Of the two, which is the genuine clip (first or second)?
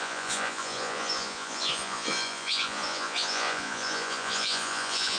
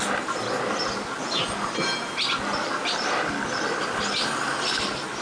second